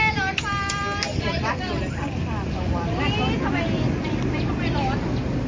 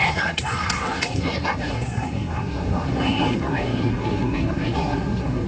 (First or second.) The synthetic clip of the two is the second